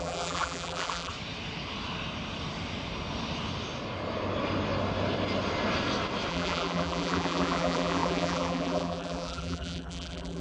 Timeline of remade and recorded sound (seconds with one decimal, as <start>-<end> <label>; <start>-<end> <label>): 0.0-1.1 remade; 1.1-6.3 recorded; 6.3-10.4 remade